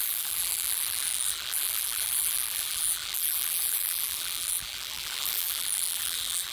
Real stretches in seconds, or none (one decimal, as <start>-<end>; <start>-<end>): none